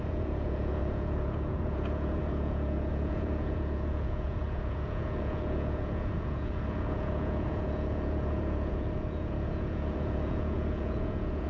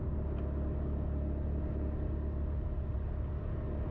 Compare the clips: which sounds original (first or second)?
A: second